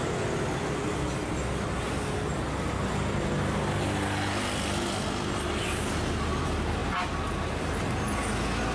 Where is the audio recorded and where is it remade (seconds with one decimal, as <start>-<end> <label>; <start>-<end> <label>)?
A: 0.0-8.7 recorded